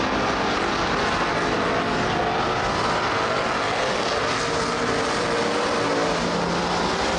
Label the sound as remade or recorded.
recorded